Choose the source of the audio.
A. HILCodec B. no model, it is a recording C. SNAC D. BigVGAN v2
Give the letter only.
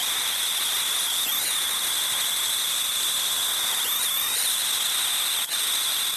B